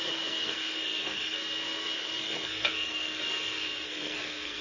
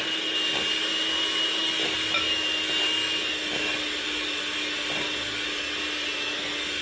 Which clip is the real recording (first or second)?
second